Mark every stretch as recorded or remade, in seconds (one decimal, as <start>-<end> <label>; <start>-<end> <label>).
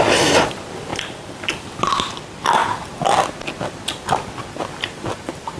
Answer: 0.0-0.9 recorded; 0.9-2.1 remade; 2.1-5.6 recorded